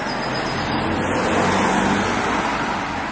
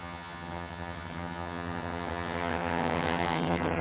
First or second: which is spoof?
second